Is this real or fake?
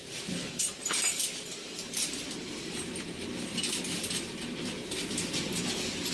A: fake